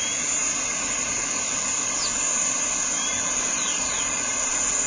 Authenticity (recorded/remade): recorded